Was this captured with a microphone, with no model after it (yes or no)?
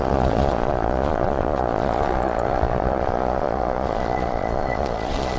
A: no